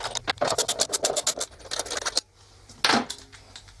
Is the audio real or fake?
real